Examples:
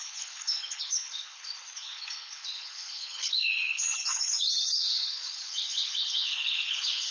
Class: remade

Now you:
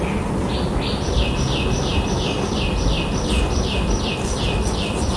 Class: recorded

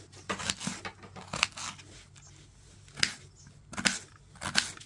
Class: recorded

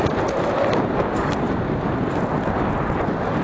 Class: recorded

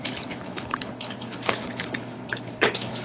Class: remade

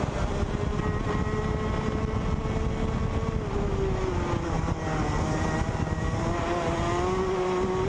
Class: recorded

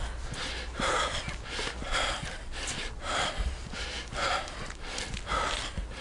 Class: recorded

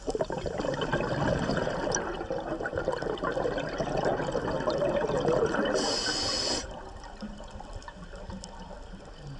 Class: recorded